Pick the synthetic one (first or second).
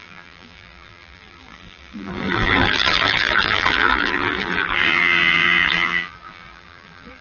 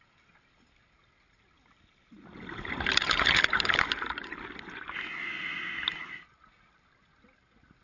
first